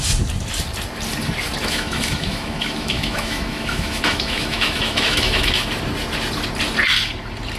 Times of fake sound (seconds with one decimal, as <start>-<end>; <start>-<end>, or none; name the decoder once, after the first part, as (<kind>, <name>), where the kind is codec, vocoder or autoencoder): 1.6-5.7 (autoencoder, DAC-VAE)